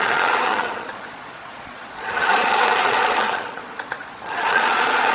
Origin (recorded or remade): remade